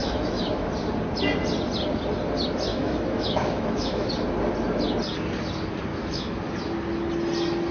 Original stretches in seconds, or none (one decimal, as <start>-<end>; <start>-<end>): 0.7-2.7; 4.1-5.9; 6.4-7.7